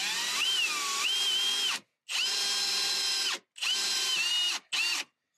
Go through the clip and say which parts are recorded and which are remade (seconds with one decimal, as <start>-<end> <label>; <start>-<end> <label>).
0.0-5.4 recorded